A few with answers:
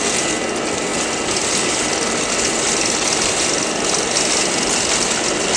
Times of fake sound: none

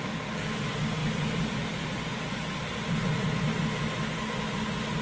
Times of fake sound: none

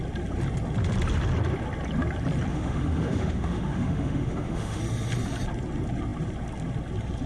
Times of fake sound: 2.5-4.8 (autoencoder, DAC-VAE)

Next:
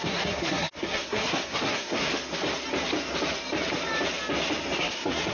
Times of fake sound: 0.0-2.1 (codec, SNAC); 4.8-5.3

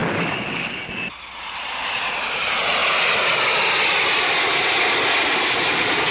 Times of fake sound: 0.0-0.8 (codec, DAC)

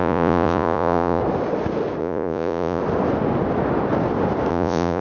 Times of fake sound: 0.0-1.2 (vocoder, Vocos); 2.0-2.8; 4.5-5.0

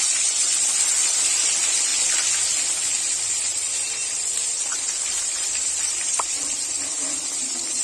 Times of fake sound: 0.0-1.9 (vocoder, BigVGAN v2); 3.3-7.8

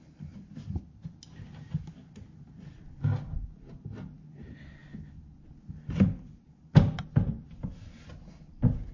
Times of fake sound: none